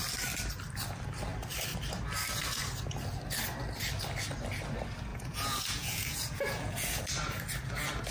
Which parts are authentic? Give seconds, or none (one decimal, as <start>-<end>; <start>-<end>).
0.0-5.1; 7.0-8.1